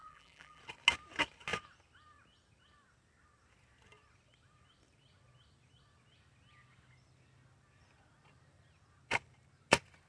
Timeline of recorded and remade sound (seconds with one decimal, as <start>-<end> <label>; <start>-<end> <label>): 0.0-0.6 remade; 0.6-10.1 recorded